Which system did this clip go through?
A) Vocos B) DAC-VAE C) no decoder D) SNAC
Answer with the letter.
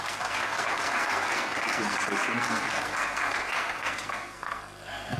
D